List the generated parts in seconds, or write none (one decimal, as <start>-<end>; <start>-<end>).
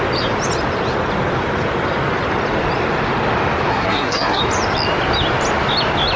3.7-4.4